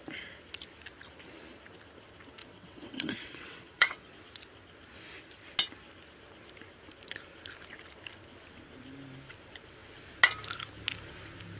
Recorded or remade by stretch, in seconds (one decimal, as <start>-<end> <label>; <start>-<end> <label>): 0.0-2.4 recorded; 2.4-4.1 remade; 4.1-11.6 recorded